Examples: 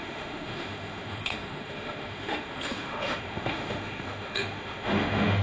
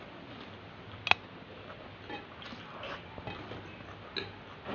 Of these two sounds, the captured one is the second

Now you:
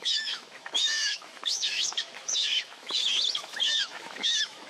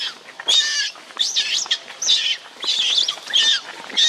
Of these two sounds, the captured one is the second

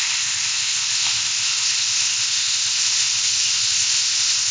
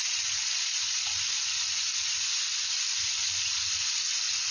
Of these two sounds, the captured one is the second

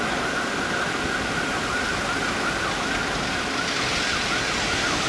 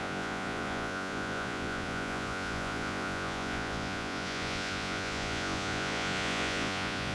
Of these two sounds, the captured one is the first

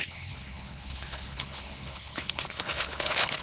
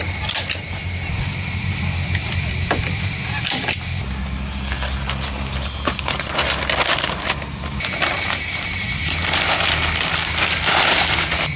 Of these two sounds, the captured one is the second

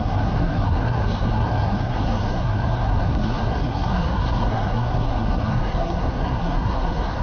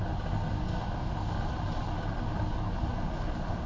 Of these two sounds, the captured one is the second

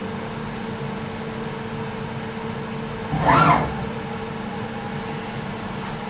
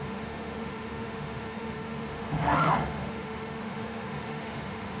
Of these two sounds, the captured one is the first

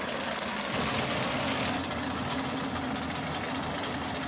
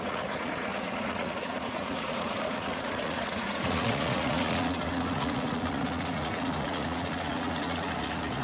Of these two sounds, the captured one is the first